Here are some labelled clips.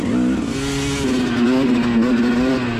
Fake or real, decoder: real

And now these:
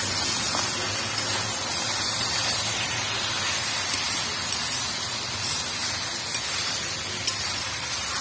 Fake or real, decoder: real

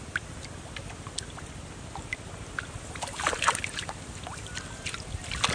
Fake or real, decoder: real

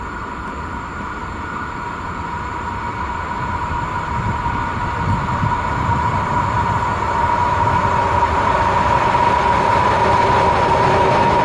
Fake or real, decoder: real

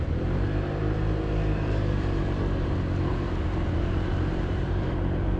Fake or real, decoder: fake, vocoder, BigVGAN v2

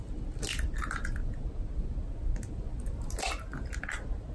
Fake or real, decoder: real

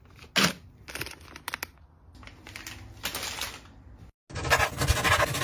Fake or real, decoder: real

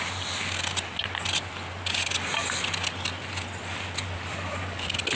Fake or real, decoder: real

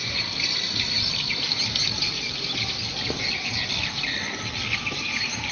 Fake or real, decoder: real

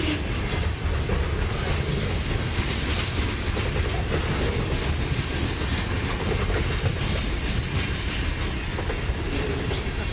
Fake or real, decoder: real